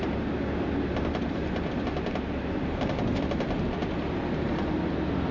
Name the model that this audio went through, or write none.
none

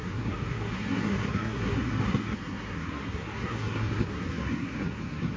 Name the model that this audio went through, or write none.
codec, SNAC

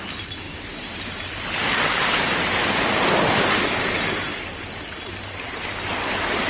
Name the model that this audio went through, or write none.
none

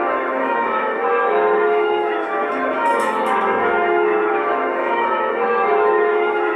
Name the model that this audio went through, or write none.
autoencoder, DAC-VAE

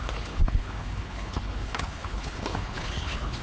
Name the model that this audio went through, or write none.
codec, HILCodec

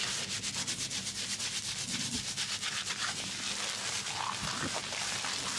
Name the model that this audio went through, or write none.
none